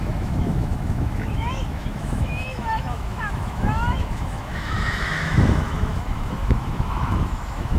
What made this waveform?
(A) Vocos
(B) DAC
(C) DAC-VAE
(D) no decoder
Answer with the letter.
C